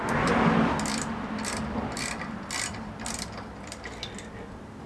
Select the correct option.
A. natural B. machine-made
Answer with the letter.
A